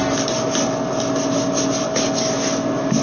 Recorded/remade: recorded